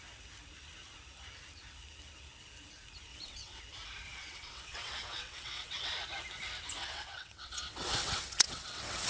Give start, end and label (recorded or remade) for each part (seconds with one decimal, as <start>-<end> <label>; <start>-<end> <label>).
0.0-3.1 recorded; 3.1-3.6 remade; 3.6-4.1 recorded; 4.1-5.9 remade; 5.9-6.8 recorded; 6.8-9.1 remade